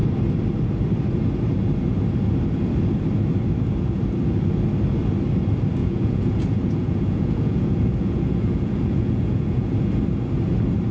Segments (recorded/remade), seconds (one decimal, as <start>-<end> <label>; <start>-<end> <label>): 0.0-5.8 recorded; 5.8-9.8 remade; 9.8-10.9 recorded